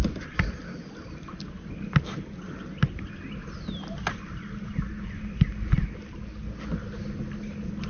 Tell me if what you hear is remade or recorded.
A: recorded